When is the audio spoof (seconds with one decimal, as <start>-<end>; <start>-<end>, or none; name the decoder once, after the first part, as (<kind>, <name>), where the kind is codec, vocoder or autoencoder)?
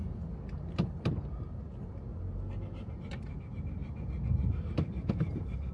none